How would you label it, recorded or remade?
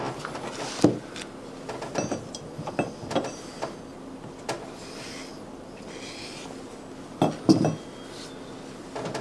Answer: recorded